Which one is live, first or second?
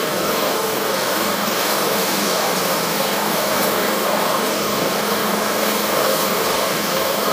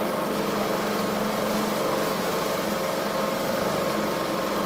second